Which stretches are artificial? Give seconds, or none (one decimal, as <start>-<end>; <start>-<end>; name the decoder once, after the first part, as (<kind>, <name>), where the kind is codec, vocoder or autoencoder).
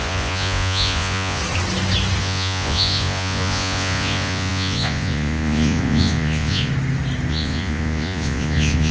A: 0.0-1.4 (vocoder, Vocos); 2.2-6.7; 7.3-8.9